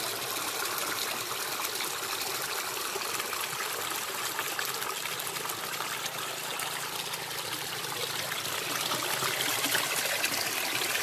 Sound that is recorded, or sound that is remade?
recorded